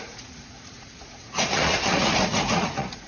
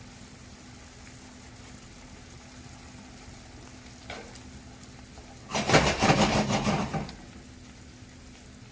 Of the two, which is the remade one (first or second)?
first